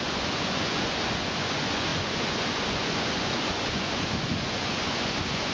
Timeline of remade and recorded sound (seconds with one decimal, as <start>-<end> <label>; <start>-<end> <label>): 0.0-5.5 remade

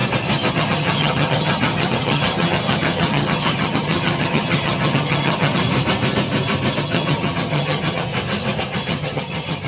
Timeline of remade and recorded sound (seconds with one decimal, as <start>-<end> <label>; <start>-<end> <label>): 0.0-0.5 recorded; 0.5-5.6 remade; 5.6-6.8 recorded; 6.8-8.1 remade; 8.1-8.7 recorded; 8.7-9.7 remade